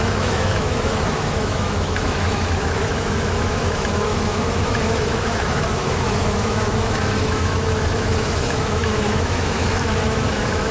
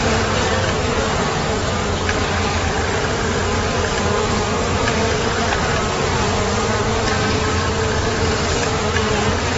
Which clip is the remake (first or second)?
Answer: first